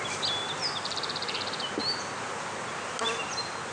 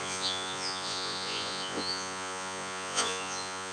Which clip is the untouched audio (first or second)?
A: first